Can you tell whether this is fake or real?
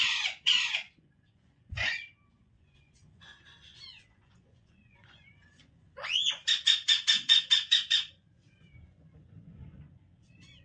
fake